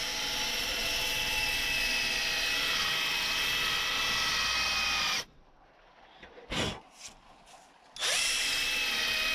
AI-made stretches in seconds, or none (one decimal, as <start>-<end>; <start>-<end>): 0.0-9.3